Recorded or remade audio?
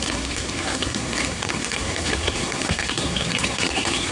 remade